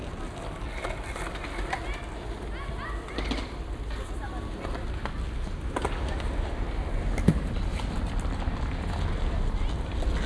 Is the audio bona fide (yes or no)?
yes